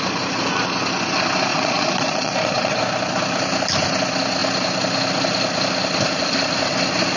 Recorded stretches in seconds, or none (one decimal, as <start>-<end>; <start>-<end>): 0.0-1.5; 2.8-7.2